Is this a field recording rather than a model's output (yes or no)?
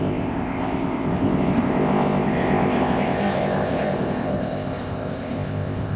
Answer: no